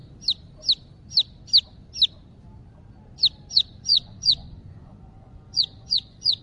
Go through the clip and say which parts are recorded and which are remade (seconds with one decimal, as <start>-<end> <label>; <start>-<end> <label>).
0.0-3.5 recorded; 3.5-6.4 remade